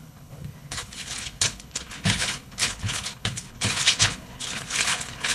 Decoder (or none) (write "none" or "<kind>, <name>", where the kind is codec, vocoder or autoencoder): codec, HILCodec